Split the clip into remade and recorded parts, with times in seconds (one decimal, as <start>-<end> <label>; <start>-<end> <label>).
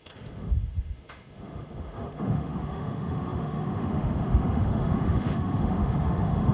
0.0-6.5 remade